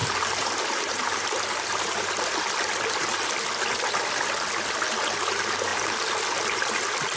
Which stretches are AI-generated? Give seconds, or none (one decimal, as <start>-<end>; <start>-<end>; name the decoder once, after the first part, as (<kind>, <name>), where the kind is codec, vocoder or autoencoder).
0.0-2.1 (vocoder, BigVGAN v2)